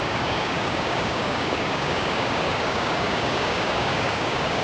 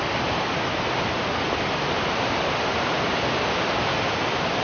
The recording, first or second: second